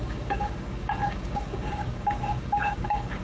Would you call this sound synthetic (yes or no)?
yes